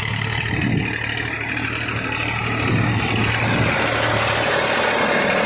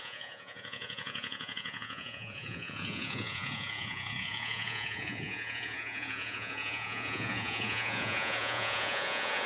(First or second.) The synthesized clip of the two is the second